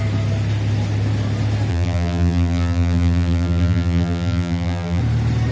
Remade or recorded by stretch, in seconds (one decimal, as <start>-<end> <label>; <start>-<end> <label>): 0.0-1.7 recorded; 1.7-5.0 remade; 5.0-5.5 recorded